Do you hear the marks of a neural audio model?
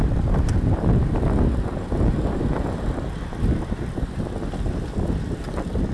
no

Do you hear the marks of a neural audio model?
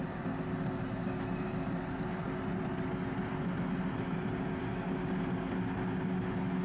no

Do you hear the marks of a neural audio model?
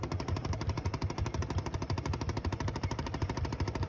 yes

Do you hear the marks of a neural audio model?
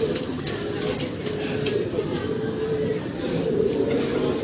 no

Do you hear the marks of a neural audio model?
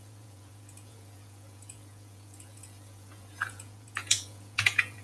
yes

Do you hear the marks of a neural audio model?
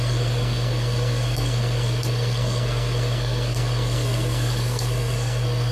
yes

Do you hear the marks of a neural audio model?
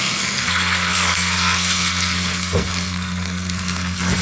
yes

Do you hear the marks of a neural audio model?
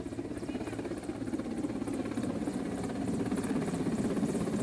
no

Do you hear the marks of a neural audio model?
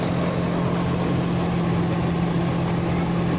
no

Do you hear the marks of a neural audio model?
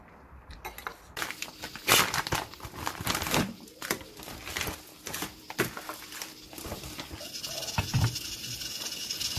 no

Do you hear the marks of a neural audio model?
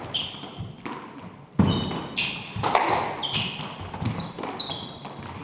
no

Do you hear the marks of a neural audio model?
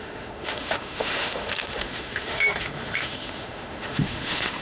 yes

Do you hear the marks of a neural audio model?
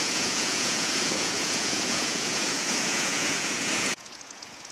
yes